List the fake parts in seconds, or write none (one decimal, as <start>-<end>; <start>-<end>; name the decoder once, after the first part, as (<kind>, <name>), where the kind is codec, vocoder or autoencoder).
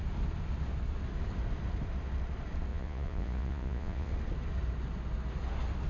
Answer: 2.7-4.1 (vocoder, Vocos)